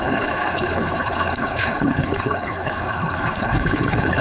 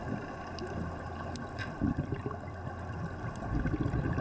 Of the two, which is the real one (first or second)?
second